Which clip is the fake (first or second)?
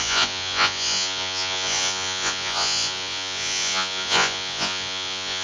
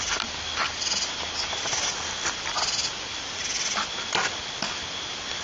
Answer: first